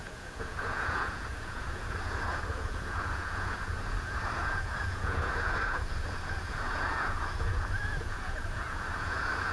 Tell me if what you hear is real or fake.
fake